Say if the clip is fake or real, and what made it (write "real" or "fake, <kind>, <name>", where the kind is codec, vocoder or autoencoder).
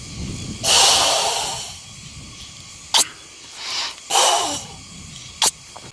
real